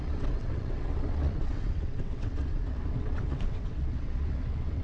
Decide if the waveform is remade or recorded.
remade